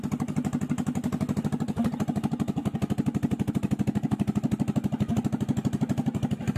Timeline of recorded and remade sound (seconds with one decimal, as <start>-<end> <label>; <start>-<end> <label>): 0.0-6.6 recorded